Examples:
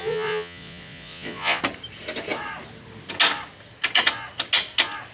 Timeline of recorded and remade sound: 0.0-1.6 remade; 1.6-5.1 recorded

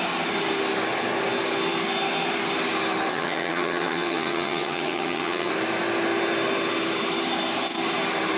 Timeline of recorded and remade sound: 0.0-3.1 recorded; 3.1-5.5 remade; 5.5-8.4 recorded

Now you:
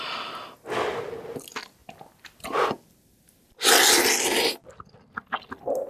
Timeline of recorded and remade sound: 0.0-5.9 recorded

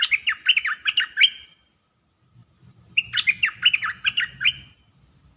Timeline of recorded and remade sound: 0.0-2.4 recorded; 2.4-3.0 remade; 3.0-5.4 recorded

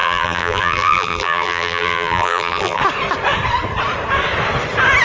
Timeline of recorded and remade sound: 0.0-2.8 remade; 2.8-5.0 recorded

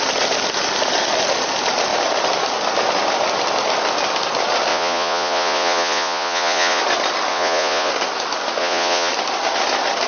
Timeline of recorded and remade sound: 0.0-4.7 recorded; 4.7-6.8 remade; 6.8-7.3 recorded; 7.3-7.9 remade; 7.9-8.6 recorded; 8.6-9.1 remade; 9.1-10.1 recorded